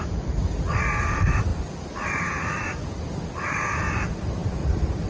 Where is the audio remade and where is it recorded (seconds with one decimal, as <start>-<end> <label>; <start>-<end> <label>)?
0.0-5.1 recorded